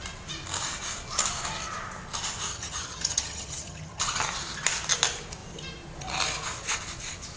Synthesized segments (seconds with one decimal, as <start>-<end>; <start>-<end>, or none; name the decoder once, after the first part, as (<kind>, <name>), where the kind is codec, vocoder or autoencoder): 2.5-4.0 (vocoder, HiFi-GAN)